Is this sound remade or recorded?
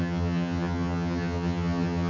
remade